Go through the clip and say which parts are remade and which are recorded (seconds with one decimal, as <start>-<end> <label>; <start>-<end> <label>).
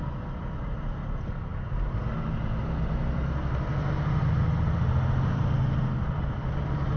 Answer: 0.0-7.0 recorded